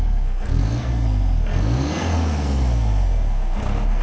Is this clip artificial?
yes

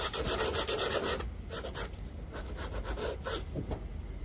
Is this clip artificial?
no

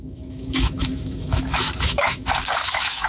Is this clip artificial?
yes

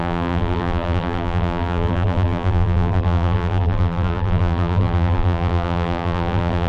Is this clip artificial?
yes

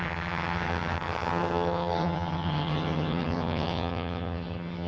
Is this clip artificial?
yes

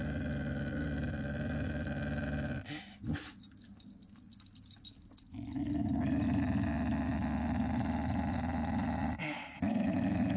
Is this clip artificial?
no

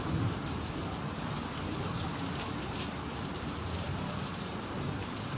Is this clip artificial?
yes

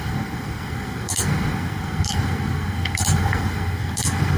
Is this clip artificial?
yes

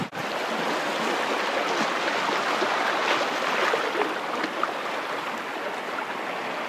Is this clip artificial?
no